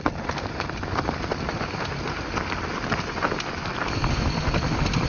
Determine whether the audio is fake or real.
real